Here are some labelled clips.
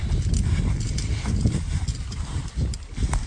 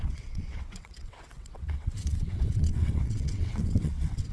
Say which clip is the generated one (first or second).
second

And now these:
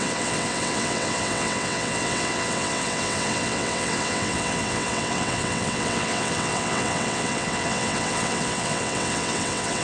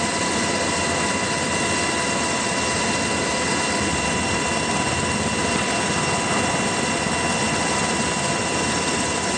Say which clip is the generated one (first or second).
first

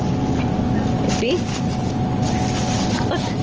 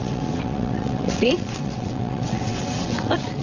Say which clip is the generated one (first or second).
second